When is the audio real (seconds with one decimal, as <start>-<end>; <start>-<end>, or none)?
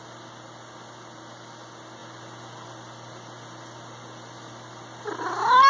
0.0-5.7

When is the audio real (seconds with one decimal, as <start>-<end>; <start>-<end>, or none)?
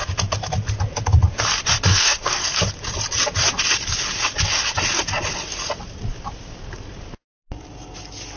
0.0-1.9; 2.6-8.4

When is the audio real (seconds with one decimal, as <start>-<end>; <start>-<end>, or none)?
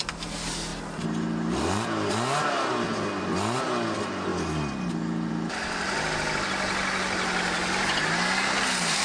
0.0-9.0